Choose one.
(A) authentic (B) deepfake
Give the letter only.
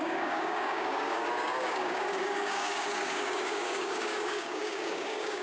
B